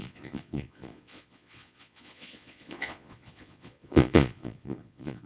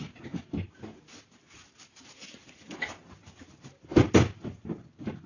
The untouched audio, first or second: second